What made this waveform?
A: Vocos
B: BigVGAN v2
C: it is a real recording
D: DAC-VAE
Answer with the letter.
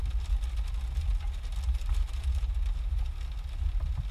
C